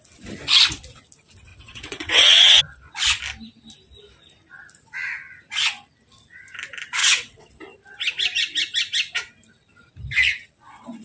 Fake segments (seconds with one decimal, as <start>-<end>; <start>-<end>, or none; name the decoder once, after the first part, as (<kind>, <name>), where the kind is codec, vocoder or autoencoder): 1.5-2.6 (vocoder, WaveNeXt); 7.0-7.5

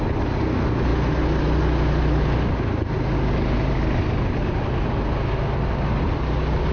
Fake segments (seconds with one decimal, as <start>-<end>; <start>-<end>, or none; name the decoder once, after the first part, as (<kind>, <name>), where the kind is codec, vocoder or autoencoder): none

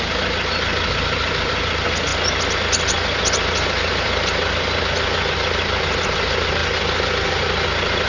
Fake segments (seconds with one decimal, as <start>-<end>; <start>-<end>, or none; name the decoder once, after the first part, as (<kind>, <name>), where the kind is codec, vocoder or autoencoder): none

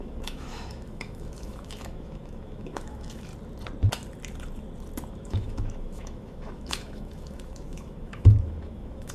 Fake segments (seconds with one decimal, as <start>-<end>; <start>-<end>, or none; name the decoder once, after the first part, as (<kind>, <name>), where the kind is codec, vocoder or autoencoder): 0.0-3.3 (autoencoder, DAC-VAE); 5.1-9.1

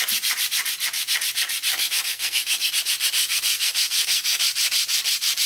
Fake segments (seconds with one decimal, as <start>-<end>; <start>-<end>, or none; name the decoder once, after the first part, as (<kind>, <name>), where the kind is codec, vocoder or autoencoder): 1.7-2.7 (codec, SNAC); 3.2-4.4

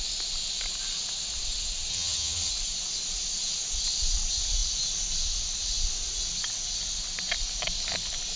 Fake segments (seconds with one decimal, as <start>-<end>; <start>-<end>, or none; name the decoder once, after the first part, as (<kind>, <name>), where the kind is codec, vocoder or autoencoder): 1.9-2.5 (vocoder, HiFi-GAN)

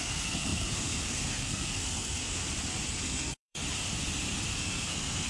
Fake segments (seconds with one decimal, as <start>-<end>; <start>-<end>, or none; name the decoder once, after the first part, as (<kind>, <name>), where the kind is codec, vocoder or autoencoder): 0.0-2.4 (codec, SNAC); 3.0-3.6; 4.6-5.3

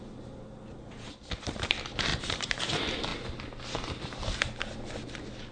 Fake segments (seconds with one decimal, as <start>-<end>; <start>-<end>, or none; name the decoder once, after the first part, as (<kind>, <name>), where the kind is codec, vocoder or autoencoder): 2.1-2.6 (vocoder, BigVGAN v2)